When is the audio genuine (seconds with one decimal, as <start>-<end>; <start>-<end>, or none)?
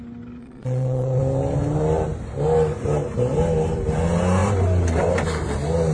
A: 0.0-0.4; 1.2-5.9